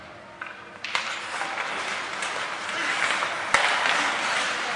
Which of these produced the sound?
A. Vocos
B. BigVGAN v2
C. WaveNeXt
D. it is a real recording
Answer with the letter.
D